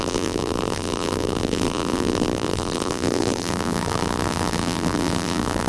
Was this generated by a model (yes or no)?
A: yes